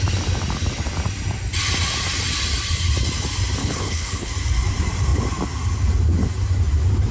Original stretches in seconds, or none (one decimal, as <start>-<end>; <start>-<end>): 0.0-3.6; 4.3-7.1